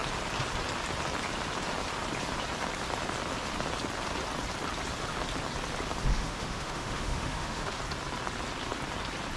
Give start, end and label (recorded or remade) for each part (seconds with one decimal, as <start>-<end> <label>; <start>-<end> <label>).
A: 0.0-6.1 recorded; 6.1-7.8 remade; 7.8-9.4 recorded